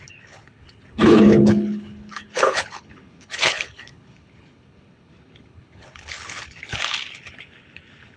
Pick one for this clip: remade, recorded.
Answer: remade